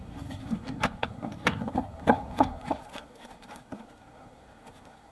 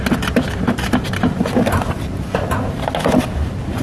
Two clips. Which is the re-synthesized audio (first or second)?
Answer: first